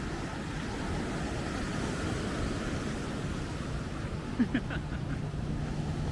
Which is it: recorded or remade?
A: recorded